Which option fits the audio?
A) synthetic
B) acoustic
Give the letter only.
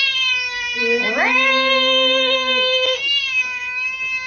B